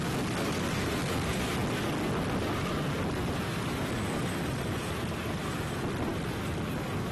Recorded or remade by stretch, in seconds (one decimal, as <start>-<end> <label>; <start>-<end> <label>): 0.0-7.1 recorded